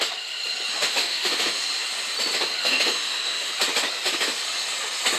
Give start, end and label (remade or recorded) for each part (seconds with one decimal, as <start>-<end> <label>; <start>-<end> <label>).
0.0-0.7 recorded; 0.7-1.6 remade; 1.6-2.6 recorded; 2.6-3.5 remade; 3.5-5.2 recorded